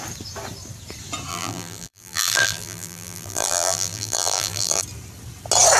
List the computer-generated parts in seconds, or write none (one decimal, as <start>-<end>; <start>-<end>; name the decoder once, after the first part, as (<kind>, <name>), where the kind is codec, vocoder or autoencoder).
1.3-4.8 (vocoder, BigVGAN v2)

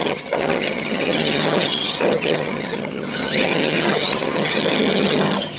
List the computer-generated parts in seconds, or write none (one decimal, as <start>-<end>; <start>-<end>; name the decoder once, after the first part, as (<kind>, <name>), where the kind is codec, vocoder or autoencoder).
0.0-5.6 (vocoder, HiFi-GAN)

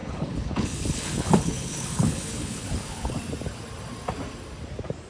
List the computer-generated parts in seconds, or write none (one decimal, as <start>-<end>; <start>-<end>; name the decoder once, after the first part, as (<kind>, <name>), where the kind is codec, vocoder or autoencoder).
0.0-3.1 (codec, HILCodec)

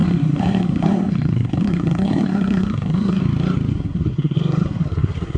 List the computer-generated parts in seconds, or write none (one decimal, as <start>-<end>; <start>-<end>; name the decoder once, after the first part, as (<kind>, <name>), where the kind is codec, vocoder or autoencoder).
0.0-3.2 (codec, SNAC); 3.7-5.4

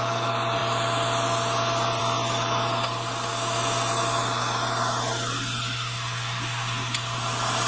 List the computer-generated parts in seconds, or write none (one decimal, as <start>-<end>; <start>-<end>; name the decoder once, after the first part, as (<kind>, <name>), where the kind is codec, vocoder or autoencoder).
none

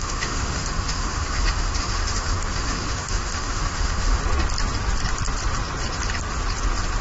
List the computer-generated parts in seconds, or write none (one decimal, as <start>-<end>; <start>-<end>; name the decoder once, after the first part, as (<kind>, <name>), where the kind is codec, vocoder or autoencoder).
0.0-4.2 (autoencoder, DAC-VAE)